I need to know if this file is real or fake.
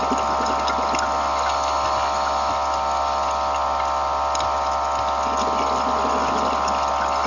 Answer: real